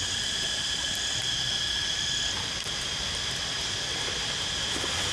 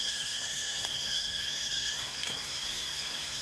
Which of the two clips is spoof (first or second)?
second